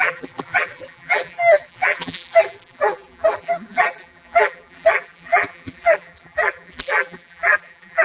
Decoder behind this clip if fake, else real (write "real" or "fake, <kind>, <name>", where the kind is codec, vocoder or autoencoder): fake, vocoder, BigVGAN v2